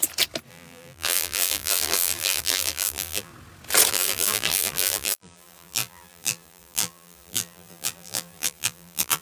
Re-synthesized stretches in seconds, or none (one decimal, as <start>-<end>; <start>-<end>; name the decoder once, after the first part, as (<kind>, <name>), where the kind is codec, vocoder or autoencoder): 0.5-3.3 (vocoder, BigVGAN v2); 3.9-9.2